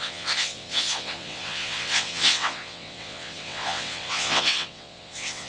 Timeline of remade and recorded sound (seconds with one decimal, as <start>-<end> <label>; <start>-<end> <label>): 0.0-5.5 remade